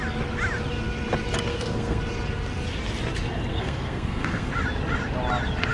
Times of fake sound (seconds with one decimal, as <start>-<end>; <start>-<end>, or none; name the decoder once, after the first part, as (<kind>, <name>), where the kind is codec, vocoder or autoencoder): 1.5-2.0 (codec, SNAC); 3.5-4.5